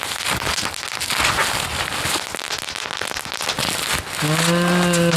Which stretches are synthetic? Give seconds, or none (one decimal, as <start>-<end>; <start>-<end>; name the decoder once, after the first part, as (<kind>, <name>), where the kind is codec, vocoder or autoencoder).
none